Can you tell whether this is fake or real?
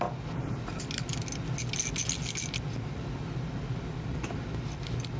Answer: real